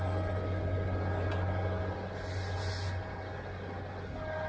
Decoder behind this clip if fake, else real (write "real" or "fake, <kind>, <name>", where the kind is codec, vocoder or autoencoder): real